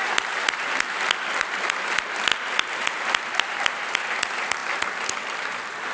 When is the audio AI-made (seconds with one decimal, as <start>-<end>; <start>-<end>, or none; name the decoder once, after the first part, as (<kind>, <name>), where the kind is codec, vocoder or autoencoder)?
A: none